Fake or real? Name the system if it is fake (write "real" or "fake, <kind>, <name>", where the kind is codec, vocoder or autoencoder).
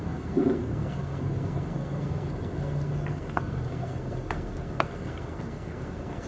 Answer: fake, codec, SNAC